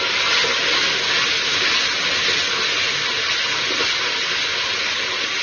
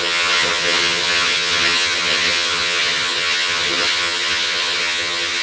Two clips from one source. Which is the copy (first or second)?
second